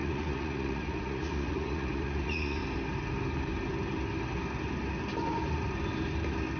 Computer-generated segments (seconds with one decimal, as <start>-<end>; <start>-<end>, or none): 0.0-2.6